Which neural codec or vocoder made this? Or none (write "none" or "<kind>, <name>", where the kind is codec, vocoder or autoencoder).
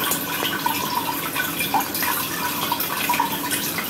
none